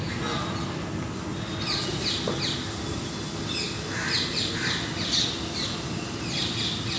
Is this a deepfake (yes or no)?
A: no